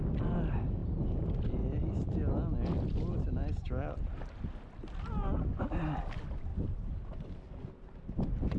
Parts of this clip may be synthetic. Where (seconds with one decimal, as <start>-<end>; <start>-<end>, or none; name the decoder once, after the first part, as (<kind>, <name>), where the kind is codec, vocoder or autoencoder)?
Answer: none